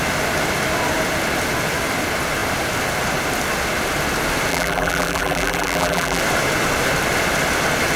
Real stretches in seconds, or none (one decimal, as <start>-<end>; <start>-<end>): 0.0-4.5; 6.2-8.0

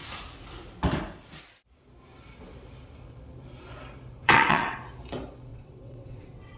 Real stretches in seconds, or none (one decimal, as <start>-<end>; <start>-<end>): 0.0-4.2; 4.8-5.5

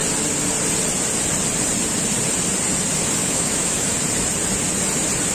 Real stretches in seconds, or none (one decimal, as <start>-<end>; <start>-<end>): 0.0-3.2; 3.9-5.3

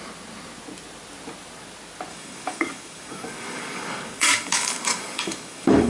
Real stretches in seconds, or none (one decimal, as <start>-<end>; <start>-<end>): 0.0-2.1

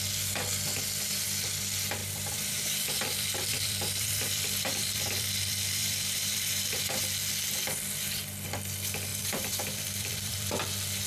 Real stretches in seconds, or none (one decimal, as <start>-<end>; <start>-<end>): 0.0-2.0; 7.0-9.1; 10.5-11.1

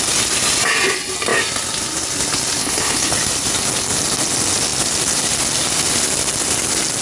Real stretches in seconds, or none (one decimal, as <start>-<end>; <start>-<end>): 0.0-2.6; 3.1-7.0

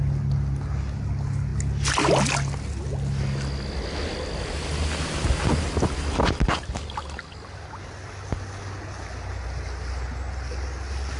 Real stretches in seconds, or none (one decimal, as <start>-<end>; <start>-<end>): 0.0-11.2